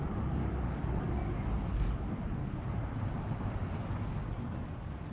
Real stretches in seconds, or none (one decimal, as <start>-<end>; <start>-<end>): 1.2-1.7; 2.4-4.1